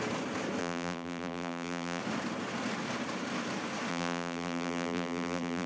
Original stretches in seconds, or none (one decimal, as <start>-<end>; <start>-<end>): 0.0-0.6; 2.0-3.9